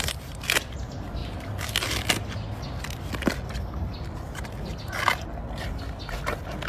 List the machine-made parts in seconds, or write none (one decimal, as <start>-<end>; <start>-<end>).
1.2-1.7